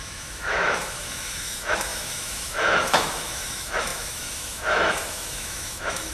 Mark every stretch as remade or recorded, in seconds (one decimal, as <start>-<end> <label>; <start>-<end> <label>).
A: 0.0-6.1 remade